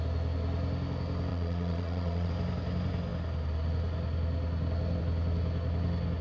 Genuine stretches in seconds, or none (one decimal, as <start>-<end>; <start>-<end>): 0.0-1.3; 2.3-6.2